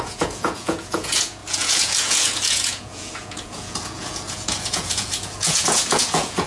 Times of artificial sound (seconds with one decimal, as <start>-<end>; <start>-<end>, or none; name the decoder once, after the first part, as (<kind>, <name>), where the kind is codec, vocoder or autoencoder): 0.0-6.5 (vocoder, Vocos)